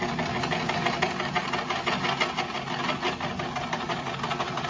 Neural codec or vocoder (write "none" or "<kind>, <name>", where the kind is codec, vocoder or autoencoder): none